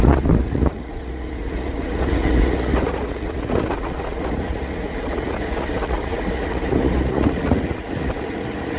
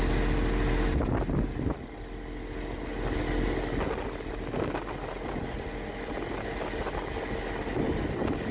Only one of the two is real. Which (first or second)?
second